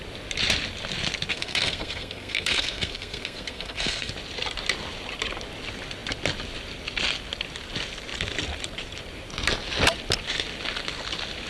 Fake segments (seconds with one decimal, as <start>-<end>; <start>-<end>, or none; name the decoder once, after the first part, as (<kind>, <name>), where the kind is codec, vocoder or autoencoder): 1.3-4.1 (codec, SNAC)